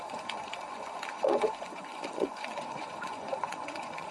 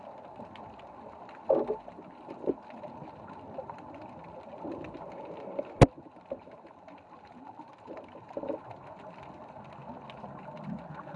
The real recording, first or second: second